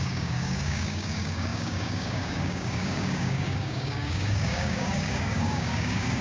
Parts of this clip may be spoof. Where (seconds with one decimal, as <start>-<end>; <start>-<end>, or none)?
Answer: 0.0-6.2